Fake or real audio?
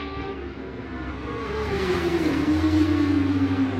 fake